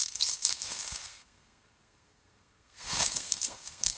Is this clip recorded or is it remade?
remade